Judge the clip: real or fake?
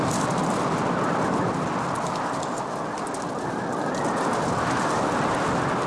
real